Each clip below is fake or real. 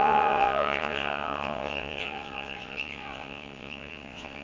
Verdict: fake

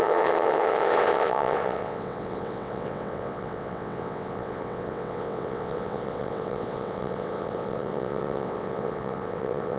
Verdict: fake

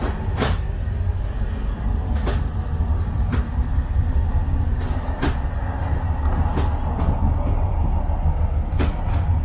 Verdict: real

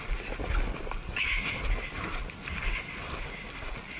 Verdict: real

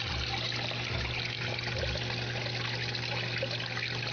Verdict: real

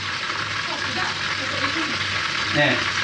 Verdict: real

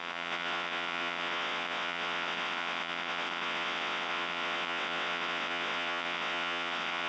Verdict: fake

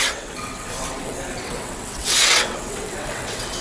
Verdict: fake